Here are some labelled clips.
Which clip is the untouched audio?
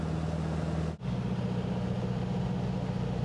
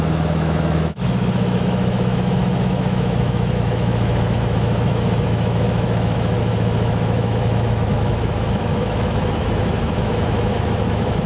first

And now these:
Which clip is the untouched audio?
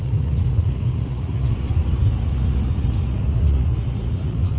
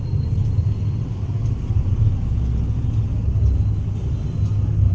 second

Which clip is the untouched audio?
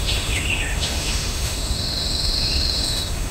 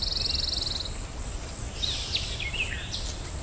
second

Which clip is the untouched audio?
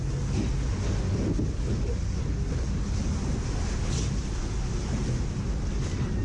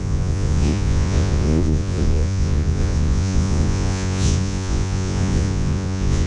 first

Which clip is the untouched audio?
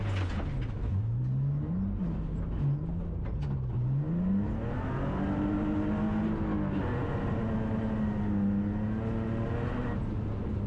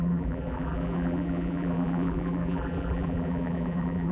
first